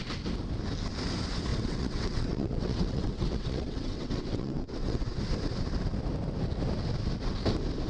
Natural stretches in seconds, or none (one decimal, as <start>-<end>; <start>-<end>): 0.0-1.5; 5.2-7.9